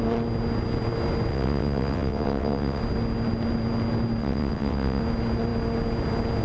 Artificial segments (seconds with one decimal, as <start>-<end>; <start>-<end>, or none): 1.3-2.8; 4.2-5.0

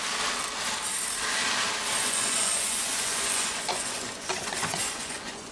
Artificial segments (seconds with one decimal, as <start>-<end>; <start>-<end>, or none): 2.0-5.5

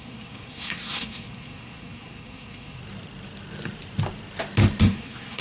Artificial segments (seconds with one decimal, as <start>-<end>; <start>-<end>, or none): 0.0-2.8; 4.8-5.4

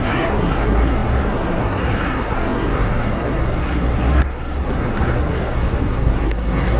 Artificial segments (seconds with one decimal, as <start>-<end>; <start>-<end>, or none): 0.0-6.8

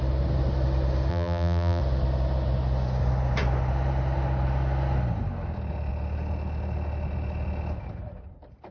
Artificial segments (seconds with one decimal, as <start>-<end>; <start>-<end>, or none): 1.1-1.8

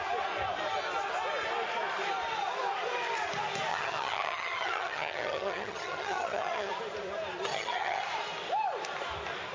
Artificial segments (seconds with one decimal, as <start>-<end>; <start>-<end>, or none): 3.7-6.7; 7.5-8.0